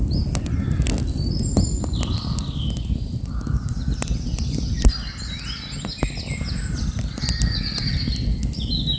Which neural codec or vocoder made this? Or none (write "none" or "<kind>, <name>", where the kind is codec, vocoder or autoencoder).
none